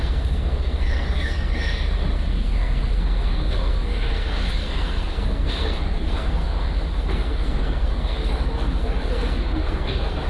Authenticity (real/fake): fake